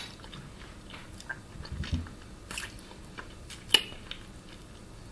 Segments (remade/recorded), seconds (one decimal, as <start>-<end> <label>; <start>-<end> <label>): 0.0-5.1 recorded